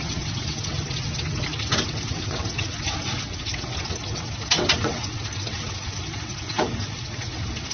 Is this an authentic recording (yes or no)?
no